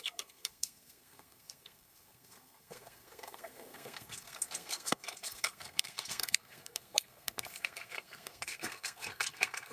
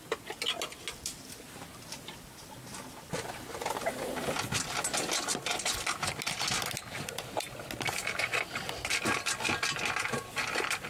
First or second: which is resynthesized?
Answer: first